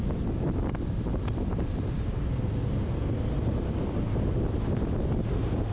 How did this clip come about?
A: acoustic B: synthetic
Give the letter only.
B